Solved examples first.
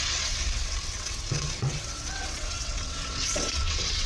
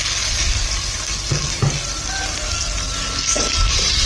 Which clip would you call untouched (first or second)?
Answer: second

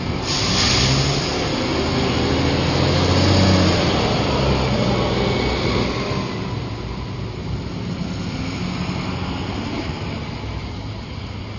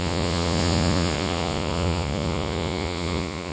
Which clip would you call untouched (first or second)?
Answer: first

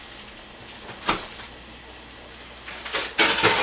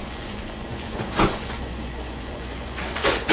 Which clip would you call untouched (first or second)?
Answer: first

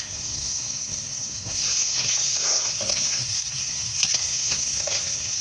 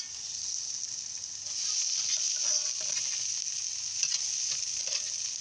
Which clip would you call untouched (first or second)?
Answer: second